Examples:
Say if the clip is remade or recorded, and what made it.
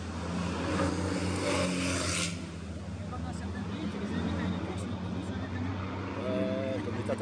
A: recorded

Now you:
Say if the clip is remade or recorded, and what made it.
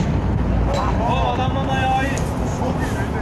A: recorded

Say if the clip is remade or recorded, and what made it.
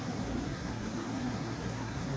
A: remade, codec, SNAC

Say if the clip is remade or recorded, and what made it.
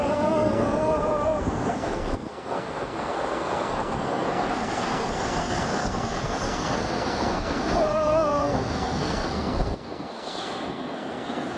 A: remade, codec, SNAC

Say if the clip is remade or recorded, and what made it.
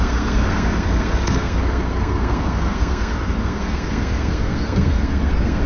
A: remade, codec, SNAC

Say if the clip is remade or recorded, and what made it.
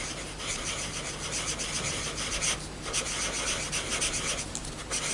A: recorded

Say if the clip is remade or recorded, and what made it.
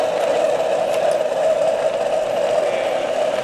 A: recorded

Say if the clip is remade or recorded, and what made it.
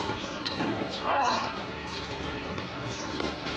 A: remade, codec, SNAC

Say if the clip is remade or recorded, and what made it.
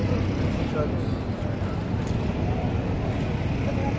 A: recorded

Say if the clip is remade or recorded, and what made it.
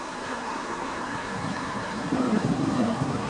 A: remade, codec, SNAC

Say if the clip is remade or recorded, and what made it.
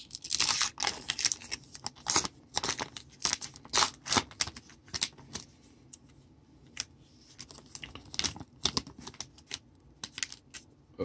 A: recorded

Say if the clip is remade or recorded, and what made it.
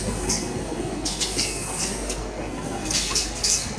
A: remade, codec, SNAC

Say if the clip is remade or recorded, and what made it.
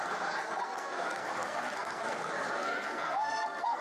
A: remade, codec, SNAC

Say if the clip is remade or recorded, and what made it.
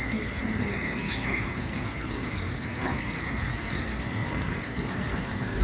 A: remade, codec, SNAC